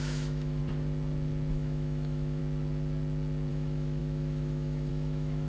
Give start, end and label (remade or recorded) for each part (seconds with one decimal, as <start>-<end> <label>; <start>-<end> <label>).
0.0-0.6 remade; 0.6-1.5 recorded; 1.5-2.4 remade; 2.4-3.5 recorded; 3.5-5.5 remade